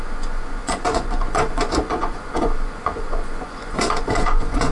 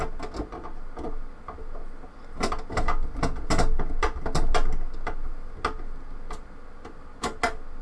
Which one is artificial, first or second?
first